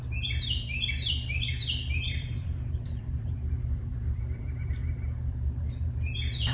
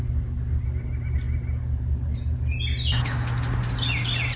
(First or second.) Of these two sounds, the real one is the second